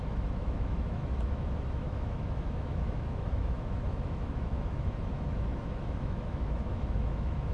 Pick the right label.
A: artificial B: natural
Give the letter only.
A